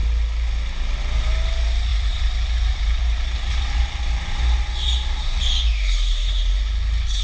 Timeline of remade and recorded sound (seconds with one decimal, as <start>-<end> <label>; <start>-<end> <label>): 0.0-1.9 recorded; 1.9-4.2 remade; 4.2-7.2 recorded